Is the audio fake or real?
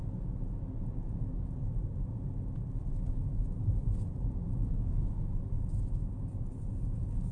real